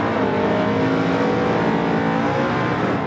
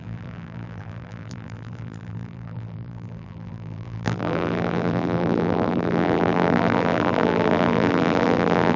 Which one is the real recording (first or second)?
first